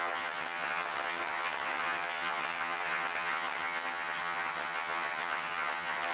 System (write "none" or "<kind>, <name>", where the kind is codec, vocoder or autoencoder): vocoder, HiFi-GAN